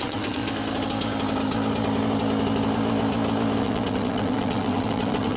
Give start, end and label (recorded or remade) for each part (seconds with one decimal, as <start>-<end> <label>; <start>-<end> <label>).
0.0-0.4 remade; 0.4-3.6 recorded; 3.6-5.4 remade